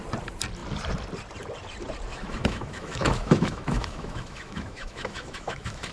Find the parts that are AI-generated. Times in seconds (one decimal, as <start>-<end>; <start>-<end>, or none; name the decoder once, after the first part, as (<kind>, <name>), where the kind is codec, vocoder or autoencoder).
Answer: 2.1-5.9 (autoencoder, DAC-VAE)